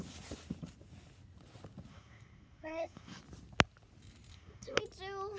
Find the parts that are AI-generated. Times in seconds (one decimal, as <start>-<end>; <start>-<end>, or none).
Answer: 1.9-3.2; 4.3-4.8